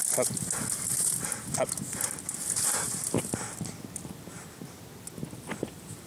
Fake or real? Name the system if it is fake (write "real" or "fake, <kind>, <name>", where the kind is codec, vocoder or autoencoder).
real